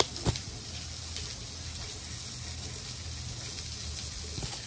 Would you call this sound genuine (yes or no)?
yes